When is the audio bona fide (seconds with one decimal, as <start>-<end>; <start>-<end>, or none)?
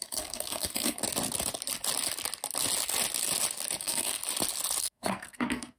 1.0-3.8; 4.2-4.8